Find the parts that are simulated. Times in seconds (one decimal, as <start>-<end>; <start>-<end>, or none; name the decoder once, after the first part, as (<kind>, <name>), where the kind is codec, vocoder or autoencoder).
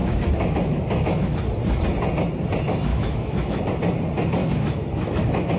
0.0-1.4 (autoencoder, DAC-VAE); 2.9-3.6; 4.4-5.6